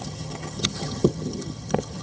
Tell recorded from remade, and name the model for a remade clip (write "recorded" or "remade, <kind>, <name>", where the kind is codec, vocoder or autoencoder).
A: remade, vocoder, HiFi-GAN